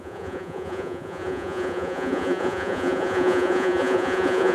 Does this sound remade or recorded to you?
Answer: remade